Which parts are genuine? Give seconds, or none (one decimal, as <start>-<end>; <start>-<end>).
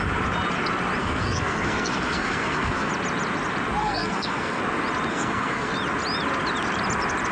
0.0-1.0; 2.9-3.8; 4.6-5.1; 5.7-7.3